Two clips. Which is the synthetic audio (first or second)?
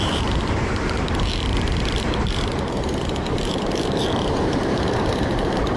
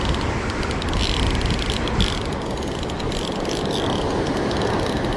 first